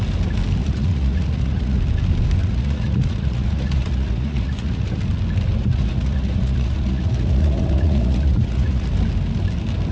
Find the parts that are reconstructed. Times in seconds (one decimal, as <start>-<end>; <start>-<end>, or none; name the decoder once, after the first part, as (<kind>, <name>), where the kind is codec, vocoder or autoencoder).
0.6-1.8 (vocoder, Vocos); 2.4-5.0; 5.6-8.9